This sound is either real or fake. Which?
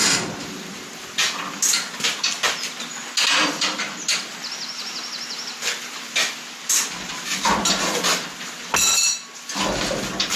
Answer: real